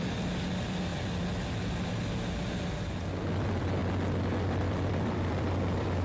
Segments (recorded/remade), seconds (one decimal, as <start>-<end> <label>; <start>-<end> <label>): 0.0-0.9 remade; 0.9-3.2 recorded; 3.2-3.8 remade; 3.8-4.6 recorded; 4.6-6.0 remade